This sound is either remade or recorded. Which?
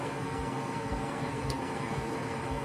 remade